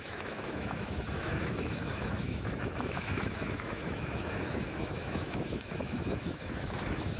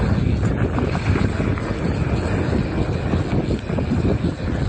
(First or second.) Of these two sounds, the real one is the second